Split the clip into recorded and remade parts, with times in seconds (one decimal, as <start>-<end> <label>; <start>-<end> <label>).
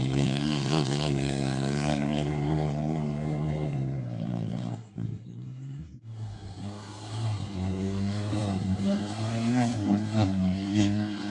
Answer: 0.0-11.3 remade